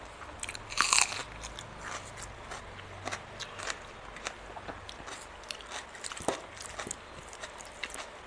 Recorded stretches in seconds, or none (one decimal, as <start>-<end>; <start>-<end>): 0.0-8.3